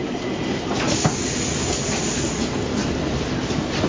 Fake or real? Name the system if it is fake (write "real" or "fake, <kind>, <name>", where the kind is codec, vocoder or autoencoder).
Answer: real